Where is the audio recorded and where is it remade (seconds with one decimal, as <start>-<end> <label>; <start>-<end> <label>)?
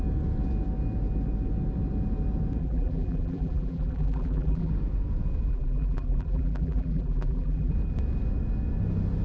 0.0-2.6 recorded; 2.6-4.7 remade; 4.7-5.5 recorded; 5.5-7.7 remade; 7.7-9.2 recorded